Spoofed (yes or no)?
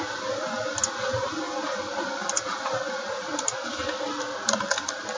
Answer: no